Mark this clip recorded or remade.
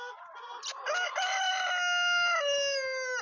recorded